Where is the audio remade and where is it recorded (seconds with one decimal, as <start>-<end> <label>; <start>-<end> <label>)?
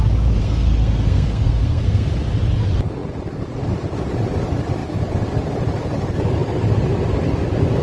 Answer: 0.0-0.4 recorded; 0.4-2.1 remade; 2.1-7.8 recorded